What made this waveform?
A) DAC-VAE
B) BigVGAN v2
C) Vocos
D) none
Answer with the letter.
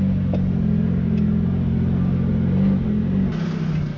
D